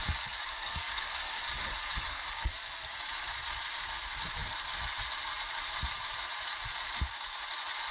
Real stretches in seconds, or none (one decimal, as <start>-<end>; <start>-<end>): 0.0-0.5; 1.4-2.1; 3.0-7.9